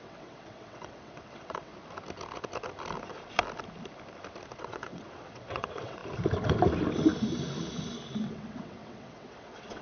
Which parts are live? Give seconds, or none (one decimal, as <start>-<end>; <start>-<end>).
1.7-4.6; 6.0-8.3